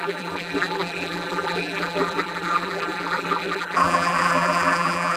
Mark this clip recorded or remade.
remade